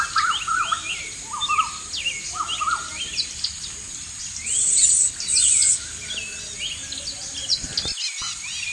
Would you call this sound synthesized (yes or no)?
no